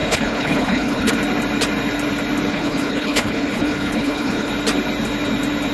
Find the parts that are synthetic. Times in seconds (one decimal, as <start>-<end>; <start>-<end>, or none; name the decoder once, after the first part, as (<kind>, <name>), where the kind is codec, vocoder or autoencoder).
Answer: 0.0-1.1 (codec, HILCodec); 2.5-4.5